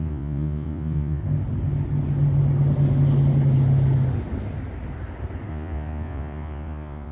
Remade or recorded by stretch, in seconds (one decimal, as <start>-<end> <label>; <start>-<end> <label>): 0.0-1.2 remade; 1.2-5.5 recorded; 5.5-7.1 remade